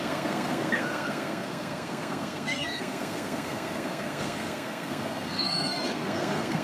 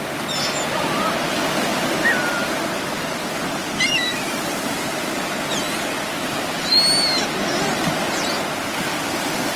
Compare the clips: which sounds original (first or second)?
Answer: second